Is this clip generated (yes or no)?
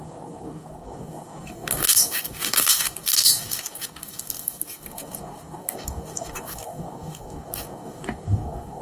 yes